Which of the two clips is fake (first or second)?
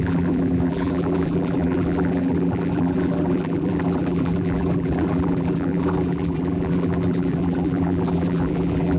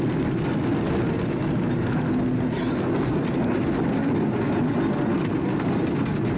first